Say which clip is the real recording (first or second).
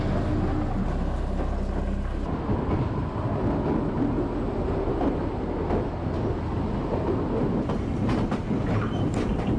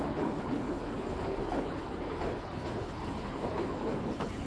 first